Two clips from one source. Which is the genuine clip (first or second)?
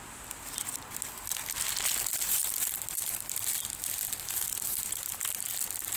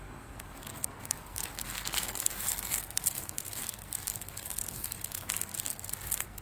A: first